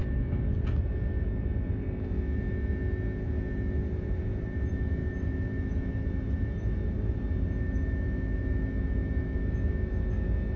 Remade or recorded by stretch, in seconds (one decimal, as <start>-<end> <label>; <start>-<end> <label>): 0.0-10.6 recorded